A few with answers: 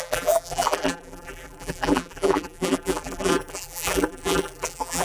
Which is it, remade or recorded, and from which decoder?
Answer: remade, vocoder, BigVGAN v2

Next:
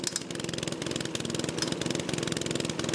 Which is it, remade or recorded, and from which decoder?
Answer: recorded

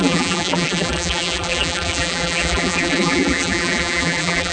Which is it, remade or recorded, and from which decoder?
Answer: remade, vocoder, BigVGAN v2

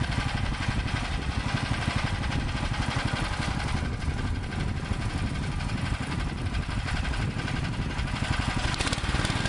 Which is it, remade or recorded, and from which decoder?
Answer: remade, vocoder, BigVGAN v2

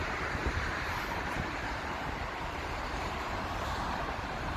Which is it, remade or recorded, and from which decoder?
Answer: remade, vocoder, BigVGAN v2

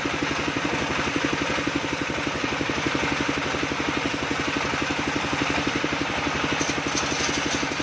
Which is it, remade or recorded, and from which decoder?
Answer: remade, vocoder, BigVGAN v2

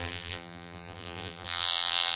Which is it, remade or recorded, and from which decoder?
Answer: remade, vocoder, BigVGAN v2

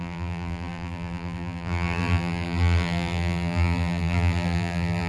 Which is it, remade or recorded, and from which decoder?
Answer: remade, vocoder, BigVGAN v2